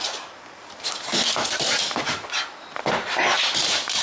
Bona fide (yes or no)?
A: yes